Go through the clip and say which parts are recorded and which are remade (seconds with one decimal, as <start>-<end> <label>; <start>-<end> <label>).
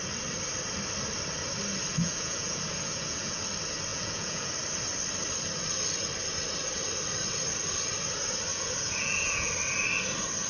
0.0-2.0 recorded; 2.0-3.4 remade; 3.4-3.9 recorded; 3.9-4.5 remade; 4.5-8.5 recorded; 8.5-9.5 remade; 9.5-10.5 recorded